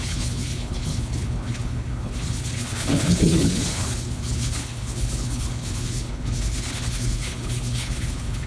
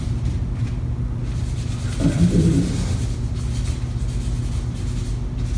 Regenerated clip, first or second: first